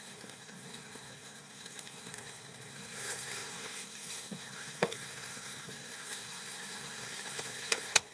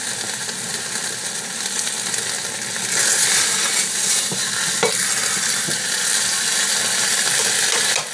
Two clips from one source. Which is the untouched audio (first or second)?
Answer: second